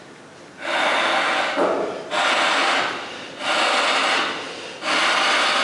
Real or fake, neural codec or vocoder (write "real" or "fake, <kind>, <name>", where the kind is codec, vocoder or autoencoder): real